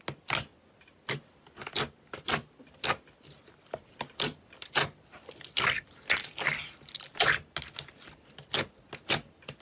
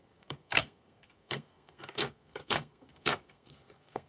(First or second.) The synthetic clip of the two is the second